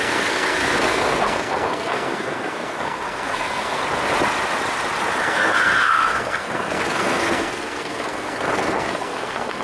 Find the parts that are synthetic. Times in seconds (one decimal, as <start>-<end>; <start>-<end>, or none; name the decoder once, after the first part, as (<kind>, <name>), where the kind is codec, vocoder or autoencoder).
0.0-3.8 (codec, SNAC); 5.2-9.6